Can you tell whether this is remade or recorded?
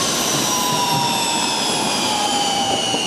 remade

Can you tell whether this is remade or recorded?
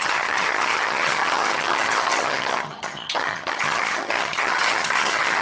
remade